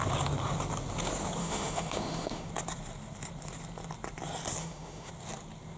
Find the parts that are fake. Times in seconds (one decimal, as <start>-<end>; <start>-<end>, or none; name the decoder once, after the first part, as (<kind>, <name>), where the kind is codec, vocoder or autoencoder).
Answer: 1.4-2.5 (autoencoder, DAC-VAE); 4.6-5.1